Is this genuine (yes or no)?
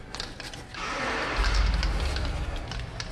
yes